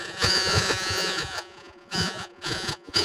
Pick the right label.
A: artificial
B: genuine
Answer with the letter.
A